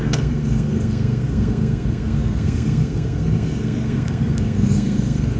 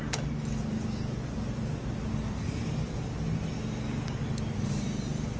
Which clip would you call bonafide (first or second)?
second